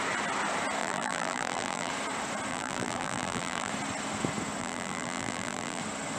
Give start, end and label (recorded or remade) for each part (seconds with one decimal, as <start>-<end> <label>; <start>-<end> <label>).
0.0-0.8 recorded; 0.8-1.9 remade; 1.9-2.5 recorded; 2.5-3.7 remade; 3.7-4.6 recorded; 4.6-5.8 remade; 5.8-6.2 recorded